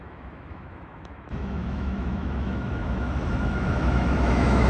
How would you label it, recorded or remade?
remade